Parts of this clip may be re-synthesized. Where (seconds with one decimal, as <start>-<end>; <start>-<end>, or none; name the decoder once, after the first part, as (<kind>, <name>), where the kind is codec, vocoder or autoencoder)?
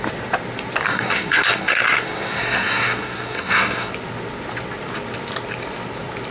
0.9-3.9 (codec, SNAC)